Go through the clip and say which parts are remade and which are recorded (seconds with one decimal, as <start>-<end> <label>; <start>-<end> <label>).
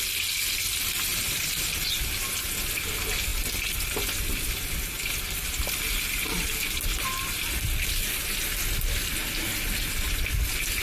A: 0.0-10.8 recorded